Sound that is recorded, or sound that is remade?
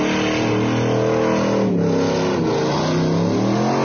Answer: recorded